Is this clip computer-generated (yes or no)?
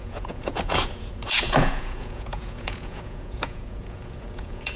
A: yes